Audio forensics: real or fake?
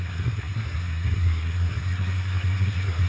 fake